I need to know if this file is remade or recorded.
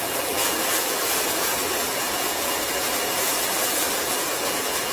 remade